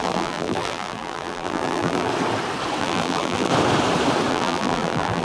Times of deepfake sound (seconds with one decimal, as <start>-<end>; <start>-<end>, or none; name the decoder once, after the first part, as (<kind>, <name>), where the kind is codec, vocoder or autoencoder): 0.0-2.1 (vocoder, BigVGAN v2); 2.8-3.5; 4.3-5.2